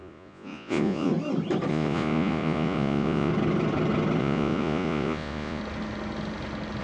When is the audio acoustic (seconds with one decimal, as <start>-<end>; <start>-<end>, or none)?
1.1-1.7; 3.3-4.2; 5.6-6.8